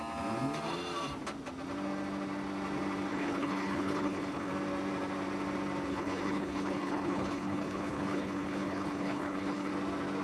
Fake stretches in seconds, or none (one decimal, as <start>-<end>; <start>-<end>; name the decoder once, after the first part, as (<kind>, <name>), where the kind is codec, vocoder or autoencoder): 3.1-4.5 (codec, HILCodec); 5.9-9.7